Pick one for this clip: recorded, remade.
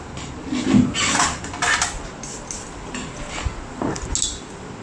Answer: recorded